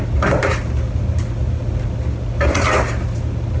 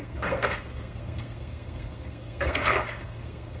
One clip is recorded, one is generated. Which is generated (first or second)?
second